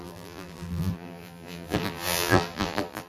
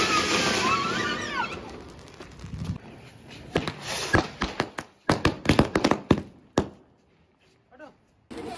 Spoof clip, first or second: first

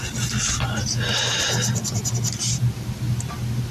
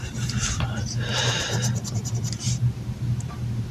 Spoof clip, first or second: second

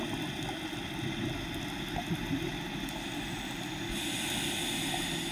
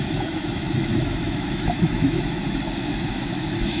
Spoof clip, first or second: second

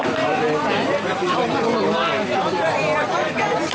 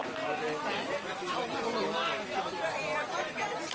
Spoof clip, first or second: first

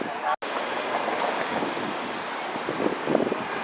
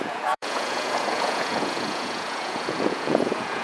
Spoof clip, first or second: second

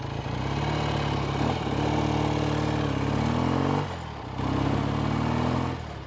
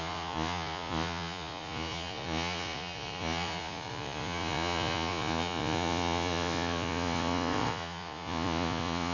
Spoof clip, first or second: second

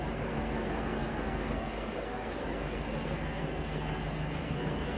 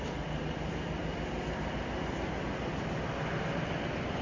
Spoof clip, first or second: first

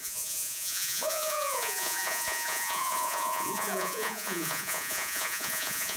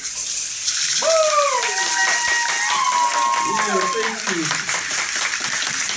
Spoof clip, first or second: first